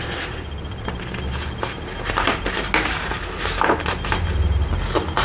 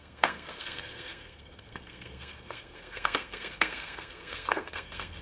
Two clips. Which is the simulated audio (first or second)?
second